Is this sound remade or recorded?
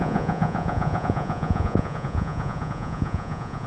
remade